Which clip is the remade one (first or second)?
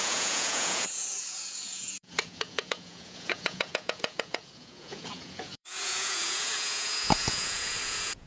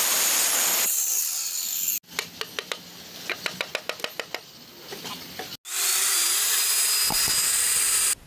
first